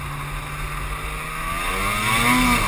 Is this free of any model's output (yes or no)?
yes